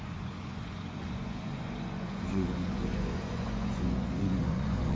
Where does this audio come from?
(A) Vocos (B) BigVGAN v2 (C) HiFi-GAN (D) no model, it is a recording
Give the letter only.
A